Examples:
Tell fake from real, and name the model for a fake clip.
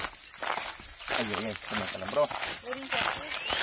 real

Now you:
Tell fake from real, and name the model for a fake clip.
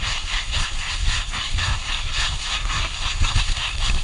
fake, codec, SNAC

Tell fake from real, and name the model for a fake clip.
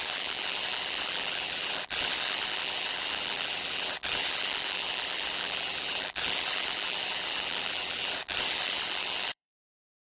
fake, vocoder, BigVGAN v2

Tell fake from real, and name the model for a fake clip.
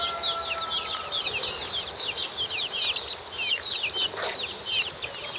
real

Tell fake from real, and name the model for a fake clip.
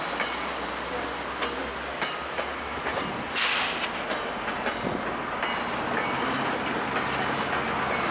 real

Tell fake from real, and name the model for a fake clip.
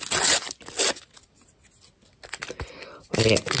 real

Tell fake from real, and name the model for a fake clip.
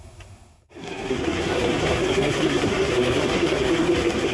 fake, codec, SNAC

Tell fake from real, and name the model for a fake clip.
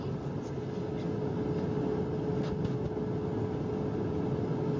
real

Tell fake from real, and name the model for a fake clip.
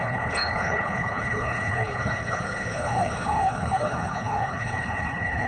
fake, codec, HILCodec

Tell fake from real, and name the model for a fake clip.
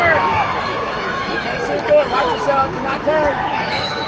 fake, autoencoder, DAC-VAE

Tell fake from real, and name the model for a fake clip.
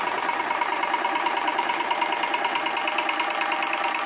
fake, vocoder, BigVGAN v2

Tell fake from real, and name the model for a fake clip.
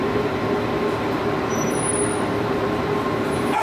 real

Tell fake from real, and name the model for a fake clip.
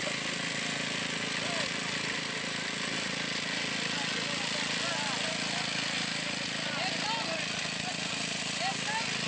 real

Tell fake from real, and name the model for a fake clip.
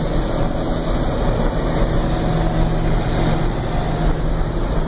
real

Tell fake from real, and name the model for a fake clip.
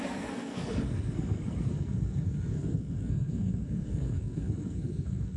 fake, codec, SNAC